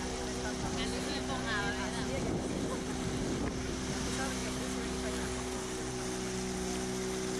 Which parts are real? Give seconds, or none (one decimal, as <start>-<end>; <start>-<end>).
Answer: 0.0-7.4